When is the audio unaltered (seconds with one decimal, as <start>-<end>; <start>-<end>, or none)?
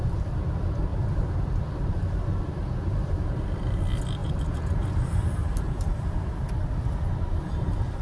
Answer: 0.0-0.9; 1.6-4.2; 4.7-5.4; 6.3-8.0